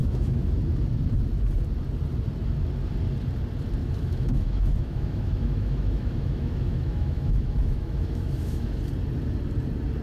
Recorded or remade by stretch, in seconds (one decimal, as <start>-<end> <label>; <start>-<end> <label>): 0.0-0.6 remade; 0.6-3.8 recorded; 3.8-8.8 remade; 8.8-10.0 recorded